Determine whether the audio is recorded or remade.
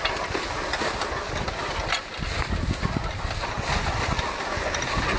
recorded